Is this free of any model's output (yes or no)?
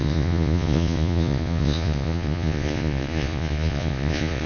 no